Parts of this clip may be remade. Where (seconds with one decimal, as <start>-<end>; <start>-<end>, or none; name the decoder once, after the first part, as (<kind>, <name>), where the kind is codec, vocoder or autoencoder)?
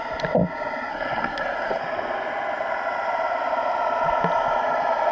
0.9-1.8 (codec, SNAC)